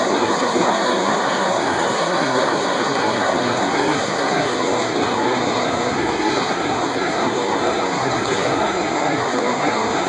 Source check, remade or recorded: remade